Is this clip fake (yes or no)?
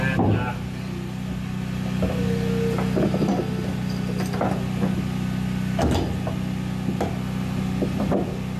no